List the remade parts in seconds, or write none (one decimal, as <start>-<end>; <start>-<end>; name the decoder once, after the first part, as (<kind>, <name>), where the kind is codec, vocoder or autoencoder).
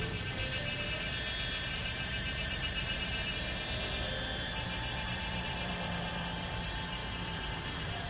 0.0-0.4 (vocoder, BigVGAN v2); 1.7-3.2; 5.0-8.1